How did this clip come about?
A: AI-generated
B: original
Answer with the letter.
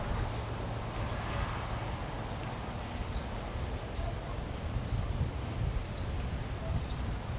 B